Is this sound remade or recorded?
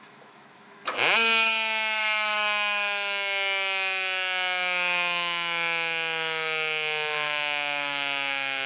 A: remade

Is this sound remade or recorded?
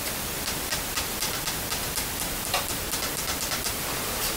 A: recorded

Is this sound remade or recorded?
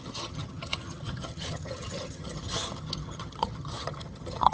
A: remade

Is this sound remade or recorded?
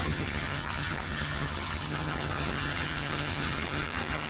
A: remade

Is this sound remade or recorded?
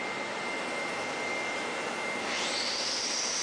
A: recorded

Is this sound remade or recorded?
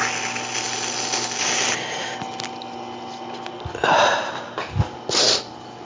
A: recorded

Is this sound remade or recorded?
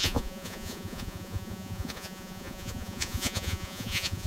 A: remade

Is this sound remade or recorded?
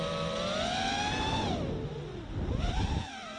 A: recorded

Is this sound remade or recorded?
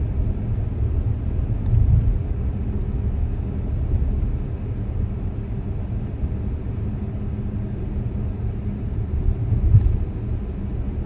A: recorded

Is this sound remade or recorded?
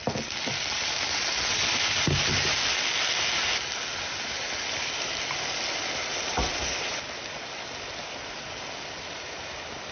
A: recorded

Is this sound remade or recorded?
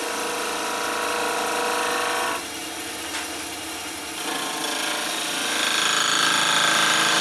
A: recorded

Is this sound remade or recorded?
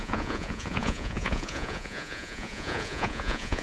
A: remade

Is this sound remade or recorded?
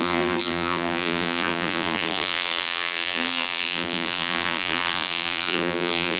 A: remade